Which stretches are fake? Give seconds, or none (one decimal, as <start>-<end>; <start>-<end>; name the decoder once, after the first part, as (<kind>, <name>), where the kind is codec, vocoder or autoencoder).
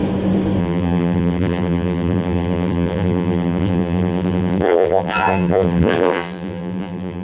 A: 0.6-7.2 (vocoder, BigVGAN v2)